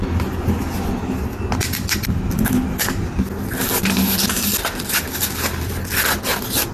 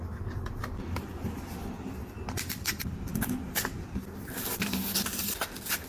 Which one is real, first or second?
first